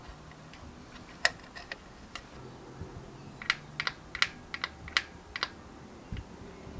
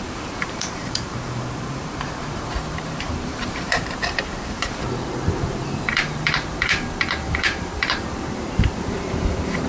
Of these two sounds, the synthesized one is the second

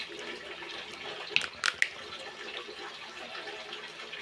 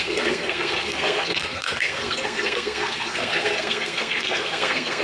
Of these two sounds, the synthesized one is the second